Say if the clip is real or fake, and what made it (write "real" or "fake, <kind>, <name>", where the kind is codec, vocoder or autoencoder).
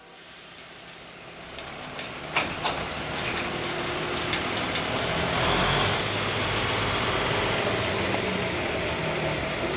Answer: real